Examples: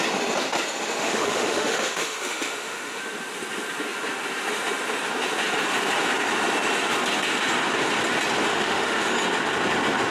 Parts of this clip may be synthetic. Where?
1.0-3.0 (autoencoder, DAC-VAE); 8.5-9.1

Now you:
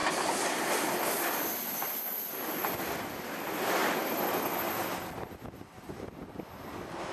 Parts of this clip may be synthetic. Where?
none

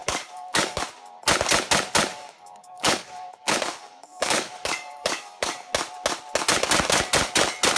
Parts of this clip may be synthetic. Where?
0.0-0.8 (codec, DAC); 2.1-5.7

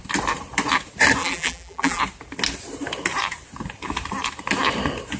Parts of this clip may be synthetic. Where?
1.2-2.0 (vocoder, BigVGAN v2)

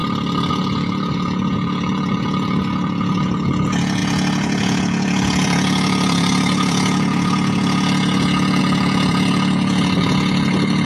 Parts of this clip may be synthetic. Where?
0.5-10.9 (vocoder, Vocos)

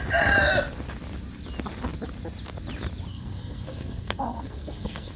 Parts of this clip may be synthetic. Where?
3.1-5.2 (codec, SNAC)

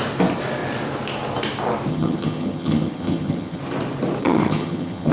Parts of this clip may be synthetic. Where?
1.9-3.6 (vocoder, HiFi-GAN); 4.2-5.1

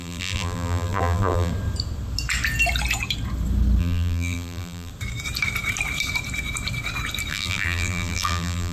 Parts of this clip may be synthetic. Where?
0.0-1.5 (vocoder, BigVGAN v2); 3.8-4.9; 7.3-8.7